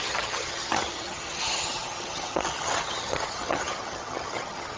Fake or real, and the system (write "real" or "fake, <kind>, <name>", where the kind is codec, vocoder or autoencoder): fake, vocoder, HiFi-GAN